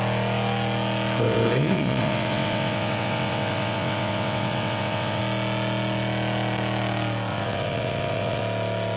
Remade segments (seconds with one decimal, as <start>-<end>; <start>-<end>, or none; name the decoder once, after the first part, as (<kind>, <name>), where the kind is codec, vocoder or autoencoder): 1.6-5.2 (vocoder, WaveNeXt); 7.3-8.4